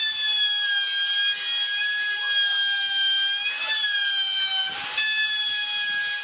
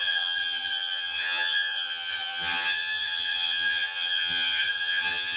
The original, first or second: first